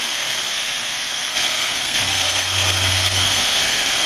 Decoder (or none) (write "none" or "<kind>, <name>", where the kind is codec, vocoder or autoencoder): codec, SNAC